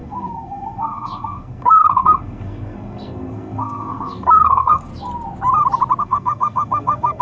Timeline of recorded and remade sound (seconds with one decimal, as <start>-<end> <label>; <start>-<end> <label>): 0.0-4.9 remade; 4.9-6.0 recorded; 6.0-7.2 remade